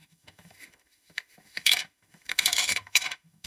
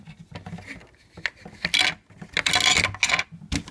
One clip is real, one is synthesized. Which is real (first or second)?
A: second